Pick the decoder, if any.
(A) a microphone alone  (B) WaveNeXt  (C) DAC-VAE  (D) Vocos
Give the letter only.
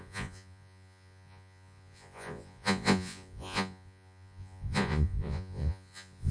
D